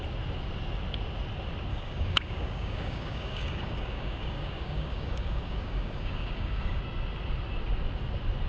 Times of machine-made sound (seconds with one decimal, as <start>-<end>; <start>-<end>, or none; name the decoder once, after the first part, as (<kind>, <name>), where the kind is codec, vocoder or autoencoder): 1.7-6.8 (codec, DAC)